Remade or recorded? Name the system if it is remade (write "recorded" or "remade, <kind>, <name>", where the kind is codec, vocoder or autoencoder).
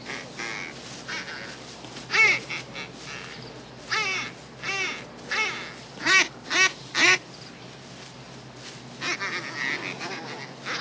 recorded